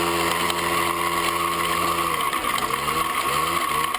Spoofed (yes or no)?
no